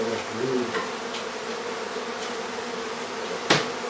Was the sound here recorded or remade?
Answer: recorded